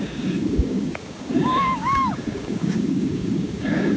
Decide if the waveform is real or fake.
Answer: fake